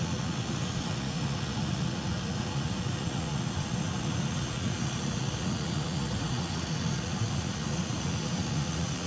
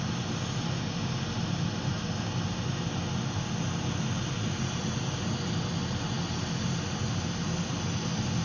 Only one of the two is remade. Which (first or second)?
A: first